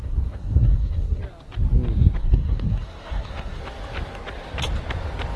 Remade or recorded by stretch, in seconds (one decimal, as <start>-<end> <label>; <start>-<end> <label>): 0.0-1.2 remade; 1.2-2.2 recorded; 2.2-3.6 remade; 3.6-5.4 recorded